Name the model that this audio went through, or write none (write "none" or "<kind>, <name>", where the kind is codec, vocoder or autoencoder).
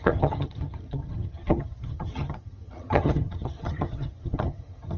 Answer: vocoder, HiFi-GAN